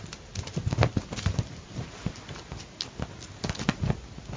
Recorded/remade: recorded